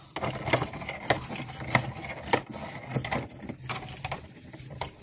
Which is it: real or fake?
real